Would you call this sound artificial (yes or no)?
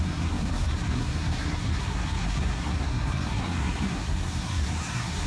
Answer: yes